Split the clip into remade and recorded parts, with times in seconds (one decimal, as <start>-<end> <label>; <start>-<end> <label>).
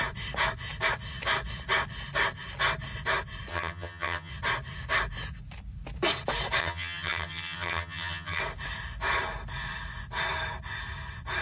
0.0-3.5 recorded; 3.5-4.3 remade; 4.3-6.6 recorded; 6.6-8.4 remade; 8.4-11.4 recorded